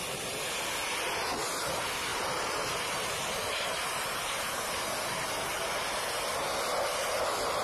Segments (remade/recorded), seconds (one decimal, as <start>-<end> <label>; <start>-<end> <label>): 0.0-2.1 recorded; 2.1-4.2 remade; 4.2-7.6 recorded